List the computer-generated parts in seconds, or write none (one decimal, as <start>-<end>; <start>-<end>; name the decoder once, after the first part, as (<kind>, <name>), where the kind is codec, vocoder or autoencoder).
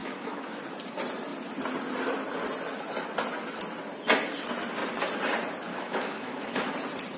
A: 0.0-0.6 (autoencoder, DAC-VAE); 5.7-6.7